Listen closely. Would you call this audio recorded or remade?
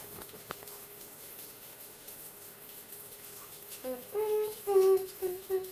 remade